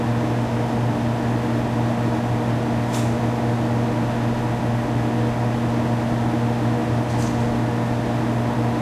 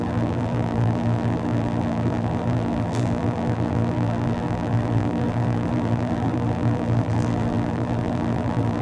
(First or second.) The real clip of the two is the first